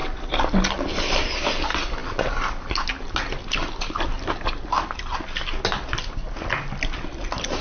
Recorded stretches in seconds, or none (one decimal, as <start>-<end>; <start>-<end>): 0.0-7.6